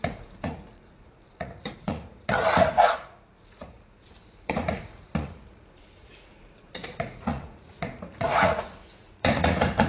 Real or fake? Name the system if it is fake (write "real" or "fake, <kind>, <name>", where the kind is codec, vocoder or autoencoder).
fake, vocoder, Vocos